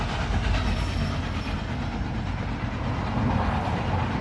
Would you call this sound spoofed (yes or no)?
no